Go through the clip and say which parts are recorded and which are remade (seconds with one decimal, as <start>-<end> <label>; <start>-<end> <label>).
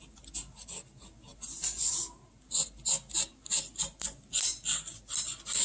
0.0-5.6 recorded